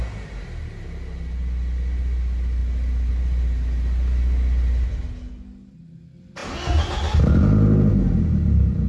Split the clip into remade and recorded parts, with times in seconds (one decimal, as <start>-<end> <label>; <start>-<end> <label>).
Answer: 0.0-8.9 recorded

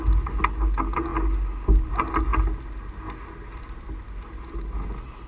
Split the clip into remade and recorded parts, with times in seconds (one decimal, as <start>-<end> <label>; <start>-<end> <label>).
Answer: 0.0-5.3 recorded

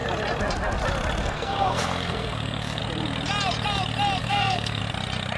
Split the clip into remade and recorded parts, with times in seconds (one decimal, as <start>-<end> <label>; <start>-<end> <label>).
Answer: 0.0-1.2 recorded; 1.2-2.8 remade; 2.8-4.2 recorded; 4.2-4.8 remade; 4.8-5.4 recorded

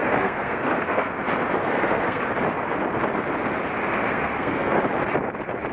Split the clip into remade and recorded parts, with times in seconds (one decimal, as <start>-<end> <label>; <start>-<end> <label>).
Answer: 0.0-1.1 remade; 1.1-1.6 recorded; 1.6-2.2 remade; 2.2-4.1 recorded; 4.1-4.8 remade; 4.8-5.7 recorded